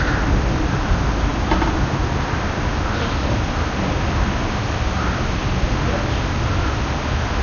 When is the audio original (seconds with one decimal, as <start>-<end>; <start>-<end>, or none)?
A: 0.0-7.4